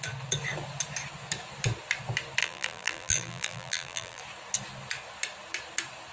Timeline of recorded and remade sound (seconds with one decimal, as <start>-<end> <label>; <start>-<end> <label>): 0.0-2.4 recorded; 2.4-4.2 remade; 4.2-6.1 recorded